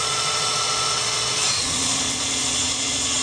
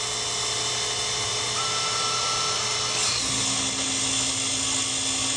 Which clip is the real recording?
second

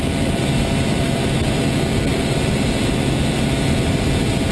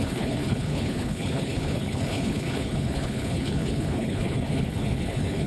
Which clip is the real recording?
first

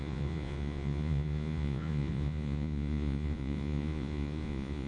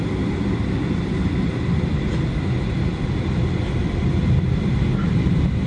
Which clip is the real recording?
second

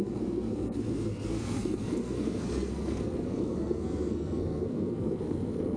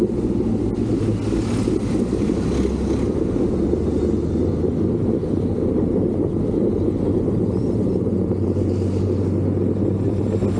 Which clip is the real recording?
second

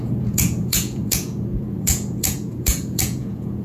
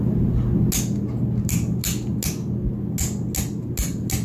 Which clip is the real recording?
second